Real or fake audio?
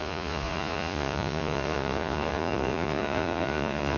fake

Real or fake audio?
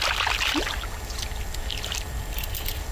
real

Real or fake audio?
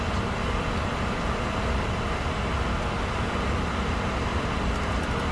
real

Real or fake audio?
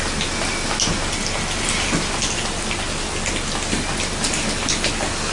real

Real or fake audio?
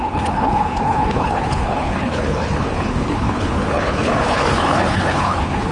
fake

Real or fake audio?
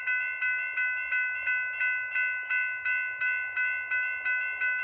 real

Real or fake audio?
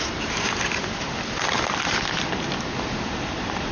fake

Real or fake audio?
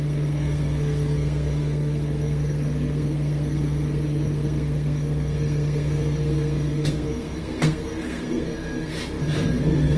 fake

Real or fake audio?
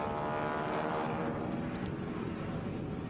real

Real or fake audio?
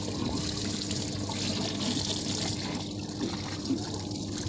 real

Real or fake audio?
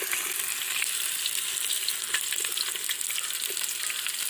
real